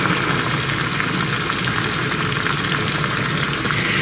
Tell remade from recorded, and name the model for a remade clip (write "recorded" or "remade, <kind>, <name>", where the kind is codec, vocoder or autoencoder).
recorded